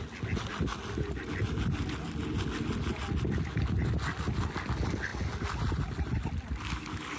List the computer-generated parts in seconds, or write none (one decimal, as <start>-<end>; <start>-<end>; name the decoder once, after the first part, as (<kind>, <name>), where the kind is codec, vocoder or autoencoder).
none